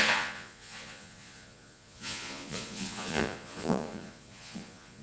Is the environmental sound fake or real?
fake